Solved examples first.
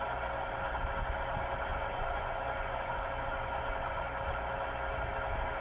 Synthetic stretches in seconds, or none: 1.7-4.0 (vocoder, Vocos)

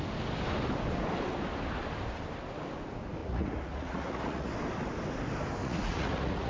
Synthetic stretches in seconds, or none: 3.2-4.5 (vocoder, Vocos); 5.6-6.5

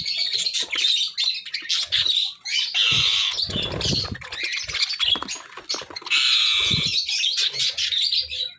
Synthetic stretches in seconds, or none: none